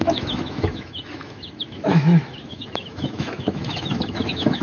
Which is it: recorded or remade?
remade